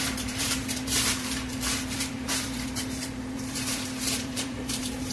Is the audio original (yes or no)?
no